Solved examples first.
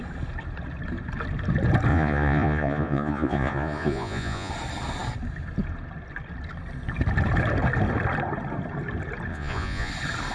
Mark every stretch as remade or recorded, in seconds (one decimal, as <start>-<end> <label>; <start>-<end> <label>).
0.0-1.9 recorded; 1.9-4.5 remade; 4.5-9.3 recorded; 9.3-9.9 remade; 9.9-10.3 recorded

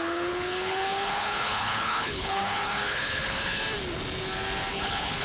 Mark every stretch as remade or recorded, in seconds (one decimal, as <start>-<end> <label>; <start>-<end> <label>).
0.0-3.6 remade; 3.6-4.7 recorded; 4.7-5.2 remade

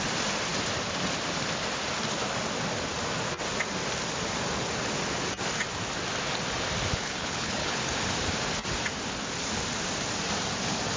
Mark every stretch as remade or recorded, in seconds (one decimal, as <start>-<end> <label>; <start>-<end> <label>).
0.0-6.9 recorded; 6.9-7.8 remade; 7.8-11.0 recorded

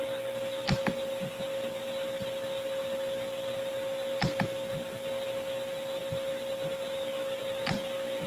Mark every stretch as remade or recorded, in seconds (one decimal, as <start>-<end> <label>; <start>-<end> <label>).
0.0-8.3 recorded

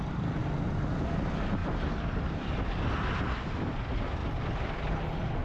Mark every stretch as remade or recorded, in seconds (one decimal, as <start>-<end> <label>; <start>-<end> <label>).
0.0-0.4 remade; 0.4-1.1 recorded; 1.1-5.4 remade

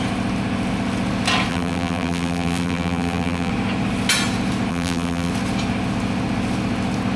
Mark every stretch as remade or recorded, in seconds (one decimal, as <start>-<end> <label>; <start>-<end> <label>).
0.0-1.5 recorded; 1.5-3.5 remade; 3.5-4.7 recorded; 4.7-5.3 remade; 5.3-7.2 recorded

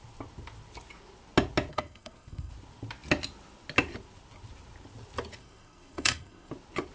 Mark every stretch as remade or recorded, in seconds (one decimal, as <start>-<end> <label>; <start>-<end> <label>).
0.0-1.7 recorded; 1.7-2.5 remade; 2.5-5.4 recorded; 5.4-6.5 remade; 6.5-6.9 recorded